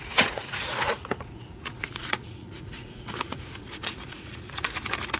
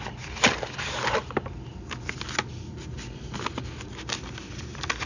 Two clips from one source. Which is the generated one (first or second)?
first